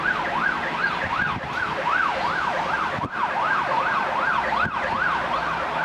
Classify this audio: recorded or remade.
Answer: recorded